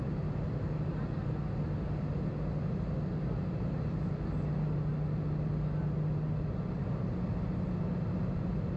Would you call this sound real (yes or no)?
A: yes